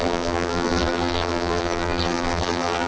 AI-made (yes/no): yes